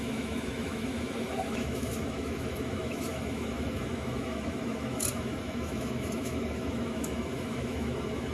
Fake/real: fake